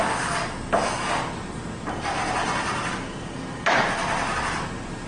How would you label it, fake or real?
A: real